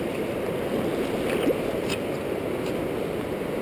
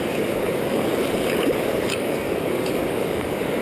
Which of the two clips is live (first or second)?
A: first